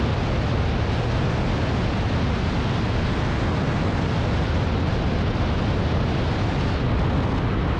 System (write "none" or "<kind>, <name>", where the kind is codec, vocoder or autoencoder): none